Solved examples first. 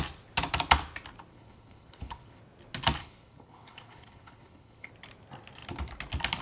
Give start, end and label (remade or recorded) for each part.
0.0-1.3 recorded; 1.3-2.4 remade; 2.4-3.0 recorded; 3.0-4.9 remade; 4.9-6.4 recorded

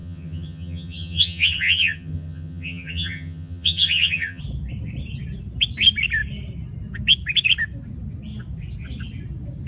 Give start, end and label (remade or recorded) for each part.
0.0-4.4 remade; 4.4-9.7 recorded

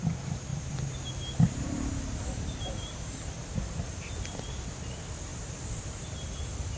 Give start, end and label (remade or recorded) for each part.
0.0-5.3 recorded; 5.3-6.0 remade; 6.0-6.8 recorded

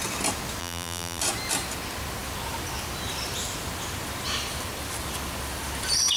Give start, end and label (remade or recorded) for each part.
0.0-0.6 recorded; 0.6-1.2 remade; 1.2-6.2 recorded

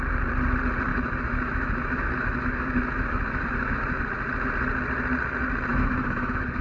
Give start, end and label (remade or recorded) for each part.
0.0-0.9 recorded; 0.9-4.0 remade; 4.0-5.7 recorded; 5.7-6.6 remade

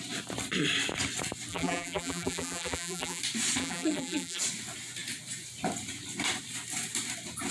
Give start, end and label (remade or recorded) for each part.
0.0-1.5 recorded; 1.5-3.2 remade; 3.2-3.6 recorded; 3.6-4.4 remade; 4.4-7.5 recorded

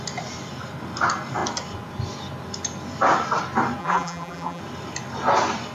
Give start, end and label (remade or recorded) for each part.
0.0-3.8 recorded; 3.8-4.6 remade; 4.6-5.7 recorded